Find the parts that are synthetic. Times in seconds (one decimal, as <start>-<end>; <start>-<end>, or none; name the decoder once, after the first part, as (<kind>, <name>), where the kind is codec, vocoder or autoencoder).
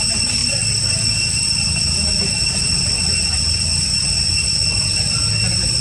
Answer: none